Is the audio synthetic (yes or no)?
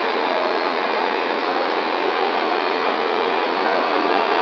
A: yes